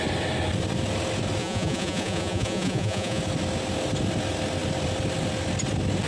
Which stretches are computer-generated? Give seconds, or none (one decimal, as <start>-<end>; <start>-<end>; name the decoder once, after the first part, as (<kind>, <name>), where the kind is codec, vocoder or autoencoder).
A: 1.4-3.2 (vocoder, Vocos)